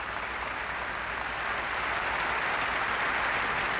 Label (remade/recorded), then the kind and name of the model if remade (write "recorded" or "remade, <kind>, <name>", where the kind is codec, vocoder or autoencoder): recorded